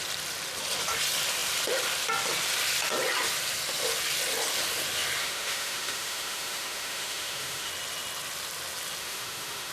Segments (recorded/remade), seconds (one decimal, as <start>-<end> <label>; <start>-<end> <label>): 0.0-5.2 recorded; 5.2-7.7 remade; 7.7-9.0 recorded; 9.0-9.7 remade

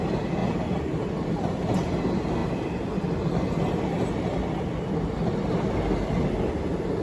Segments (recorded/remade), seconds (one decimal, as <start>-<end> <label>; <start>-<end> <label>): 0.0-0.4 recorded; 0.4-2.0 remade; 2.0-7.0 recorded

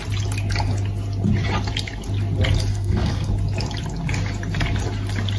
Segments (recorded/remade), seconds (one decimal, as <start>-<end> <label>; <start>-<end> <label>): 0.0-2.7 recorded; 2.7-3.3 remade; 3.3-5.4 recorded

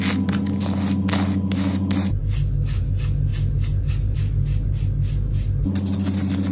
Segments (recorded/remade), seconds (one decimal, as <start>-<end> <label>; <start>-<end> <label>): 0.0-6.5 recorded

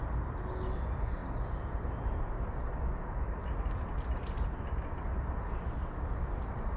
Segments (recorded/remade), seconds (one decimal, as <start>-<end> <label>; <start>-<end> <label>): 0.0-6.8 recorded

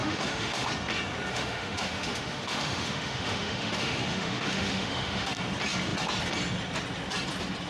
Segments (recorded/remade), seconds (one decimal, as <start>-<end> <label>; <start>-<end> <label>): 0.0-0.7 remade; 0.7-1.3 recorded; 1.3-5.3 remade; 5.3-7.7 recorded